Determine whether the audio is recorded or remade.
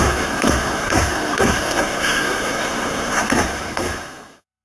remade